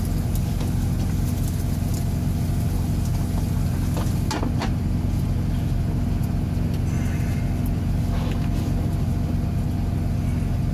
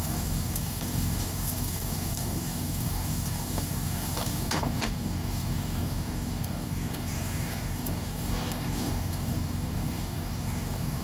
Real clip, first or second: first